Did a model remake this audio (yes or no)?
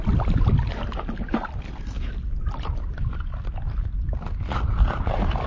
no